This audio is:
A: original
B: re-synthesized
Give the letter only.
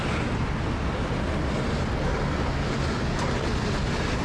A